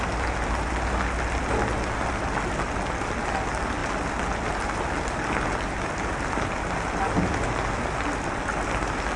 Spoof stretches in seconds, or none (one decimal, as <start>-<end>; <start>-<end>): none